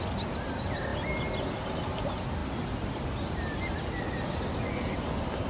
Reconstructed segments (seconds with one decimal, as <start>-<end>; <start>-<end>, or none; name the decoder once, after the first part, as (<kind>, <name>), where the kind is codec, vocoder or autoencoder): none